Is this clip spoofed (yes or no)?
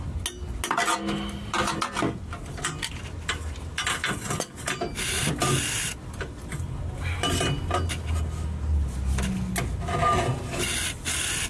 no